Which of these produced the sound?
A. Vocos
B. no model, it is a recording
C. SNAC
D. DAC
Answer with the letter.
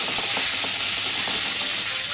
B